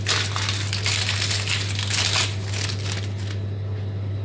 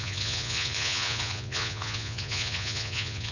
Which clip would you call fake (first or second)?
second